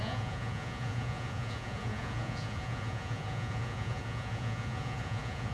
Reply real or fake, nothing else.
fake